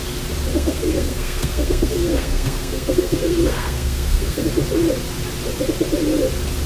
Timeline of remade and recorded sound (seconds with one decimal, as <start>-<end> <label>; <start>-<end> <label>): 0.0-0.5 recorded; 0.5-4.5 remade; 4.5-6.7 recorded